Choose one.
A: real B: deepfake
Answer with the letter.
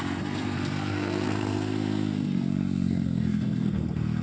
B